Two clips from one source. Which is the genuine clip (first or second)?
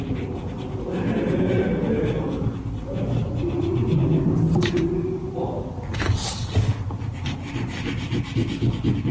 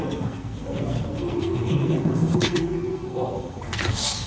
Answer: first